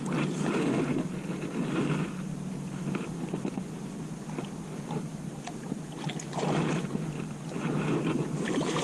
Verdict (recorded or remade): recorded